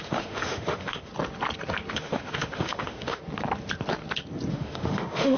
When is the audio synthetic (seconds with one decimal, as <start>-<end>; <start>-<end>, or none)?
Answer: 0.0-1.1; 1.9-3.2; 4.5-5.4